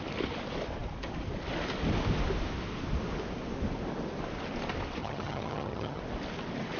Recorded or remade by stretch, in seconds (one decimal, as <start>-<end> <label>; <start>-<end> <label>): 0.0-5.0 recorded; 5.0-6.0 remade; 6.0-6.8 recorded